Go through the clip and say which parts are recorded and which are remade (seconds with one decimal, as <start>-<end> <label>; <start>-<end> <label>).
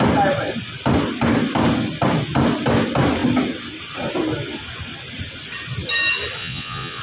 0.0-6.4 recorded; 6.4-7.0 remade